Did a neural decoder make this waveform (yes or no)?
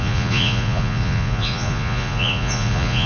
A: yes